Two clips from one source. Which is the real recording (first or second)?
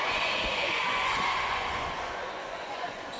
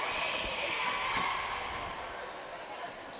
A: second